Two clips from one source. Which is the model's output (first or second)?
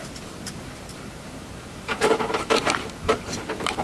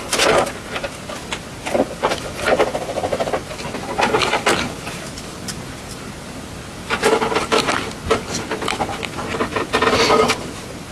first